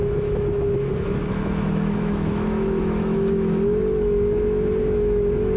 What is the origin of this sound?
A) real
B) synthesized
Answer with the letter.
B